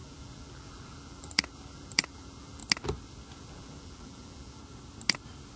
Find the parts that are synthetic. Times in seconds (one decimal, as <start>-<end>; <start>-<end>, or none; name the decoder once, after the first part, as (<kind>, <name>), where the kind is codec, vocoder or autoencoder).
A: 0.0-2.6 (vocoder, BigVGAN v2); 3.4-4.6